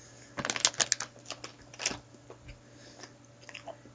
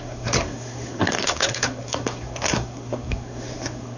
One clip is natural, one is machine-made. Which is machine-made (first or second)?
second